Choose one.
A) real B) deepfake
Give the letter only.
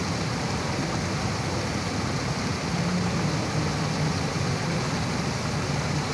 A